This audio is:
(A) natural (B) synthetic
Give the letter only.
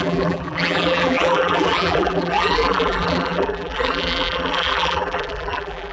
B